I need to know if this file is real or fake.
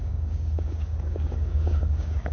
fake